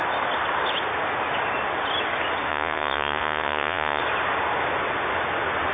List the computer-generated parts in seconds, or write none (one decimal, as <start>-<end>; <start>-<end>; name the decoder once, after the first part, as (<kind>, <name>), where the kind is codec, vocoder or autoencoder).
2.5-4.0 (vocoder, Vocos)